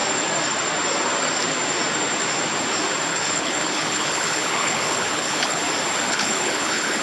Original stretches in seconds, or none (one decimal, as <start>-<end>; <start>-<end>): 0.0-3.1; 5.6-6.1